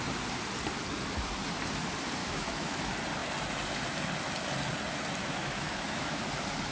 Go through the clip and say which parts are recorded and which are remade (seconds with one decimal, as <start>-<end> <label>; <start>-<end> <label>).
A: 0.0-2.2 recorded; 2.2-2.8 remade; 2.8-5.2 recorded; 5.2-6.2 remade; 6.2-6.7 recorded